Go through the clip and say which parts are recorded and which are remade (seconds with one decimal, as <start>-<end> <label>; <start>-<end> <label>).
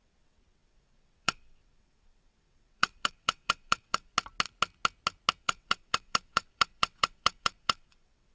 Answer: 0.0-4.1 remade; 4.1-5.4 recorded; 5.4-8.3 remade